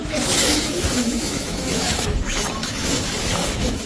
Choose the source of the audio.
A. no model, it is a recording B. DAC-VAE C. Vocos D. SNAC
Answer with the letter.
B